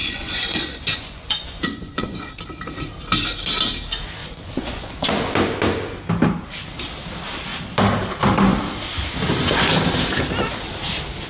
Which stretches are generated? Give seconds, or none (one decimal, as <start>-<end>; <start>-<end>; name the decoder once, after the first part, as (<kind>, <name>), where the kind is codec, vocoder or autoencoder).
0.0-2.3 (vocoder, Vocos); 4.2-5.1